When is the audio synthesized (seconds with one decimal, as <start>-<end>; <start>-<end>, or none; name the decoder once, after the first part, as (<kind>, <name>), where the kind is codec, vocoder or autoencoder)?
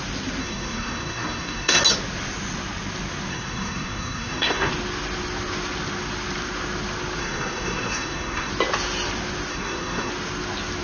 0.4-1.8 (codec, SNAC); 3.3-4.7; 7.2-8.5; 9.5-10.1